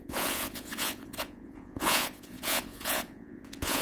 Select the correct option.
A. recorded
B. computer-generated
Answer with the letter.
B